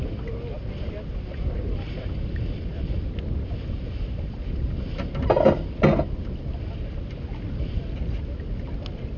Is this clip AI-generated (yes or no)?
no